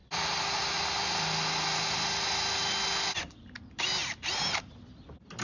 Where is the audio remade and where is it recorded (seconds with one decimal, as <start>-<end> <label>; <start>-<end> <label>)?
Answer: 0.0-5.4 recorded